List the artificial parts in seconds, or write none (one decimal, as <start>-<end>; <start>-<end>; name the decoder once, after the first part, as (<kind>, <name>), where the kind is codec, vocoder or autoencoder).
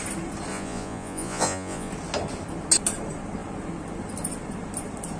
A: 0.5-1.9 (vocoder, Vocos)